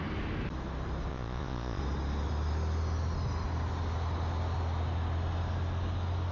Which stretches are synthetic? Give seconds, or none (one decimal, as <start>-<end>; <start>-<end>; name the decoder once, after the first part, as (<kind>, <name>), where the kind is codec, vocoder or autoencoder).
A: 1.1-1.8 (vocoder, Vocos)